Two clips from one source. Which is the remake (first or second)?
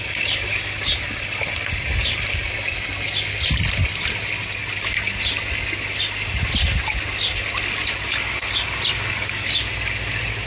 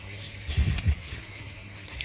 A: second